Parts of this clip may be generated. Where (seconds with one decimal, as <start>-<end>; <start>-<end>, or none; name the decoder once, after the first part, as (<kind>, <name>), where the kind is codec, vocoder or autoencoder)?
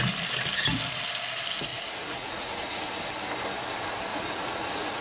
1.7-2.9 (vocoder, Vocos); 4.1-5.0